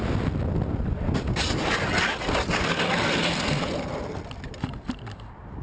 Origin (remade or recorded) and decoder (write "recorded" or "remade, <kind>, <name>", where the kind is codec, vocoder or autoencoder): recorded